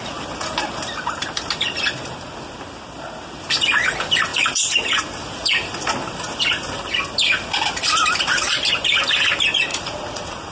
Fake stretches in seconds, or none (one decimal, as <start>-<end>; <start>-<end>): 9.7-10.5